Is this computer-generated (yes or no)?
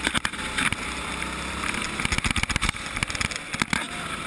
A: no